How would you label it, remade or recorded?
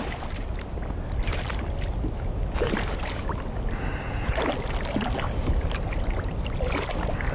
recorded